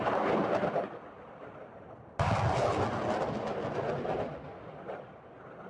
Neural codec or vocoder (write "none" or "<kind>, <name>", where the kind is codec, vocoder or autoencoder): none